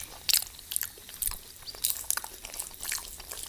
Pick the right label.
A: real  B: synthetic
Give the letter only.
A